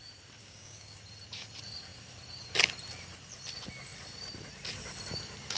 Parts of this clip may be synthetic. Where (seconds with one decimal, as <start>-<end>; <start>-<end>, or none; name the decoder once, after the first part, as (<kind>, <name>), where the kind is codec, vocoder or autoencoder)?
0.4-1.0 (codec, DAC)